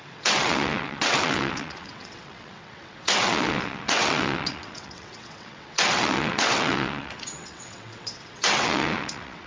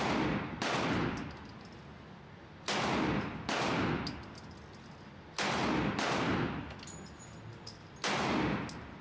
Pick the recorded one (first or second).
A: second